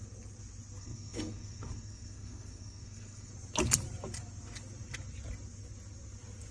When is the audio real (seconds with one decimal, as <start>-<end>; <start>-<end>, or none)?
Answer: 0.0-0.8; 3.3-6.5